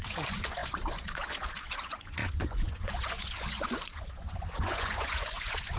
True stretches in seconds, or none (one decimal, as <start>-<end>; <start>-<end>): none